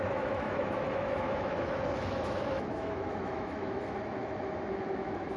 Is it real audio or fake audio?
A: fake